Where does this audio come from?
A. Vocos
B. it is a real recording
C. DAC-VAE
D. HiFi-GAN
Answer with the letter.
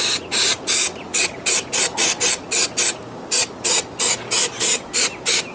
B